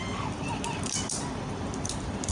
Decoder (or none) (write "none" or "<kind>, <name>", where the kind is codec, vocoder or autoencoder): none